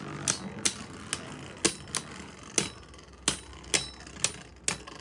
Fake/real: real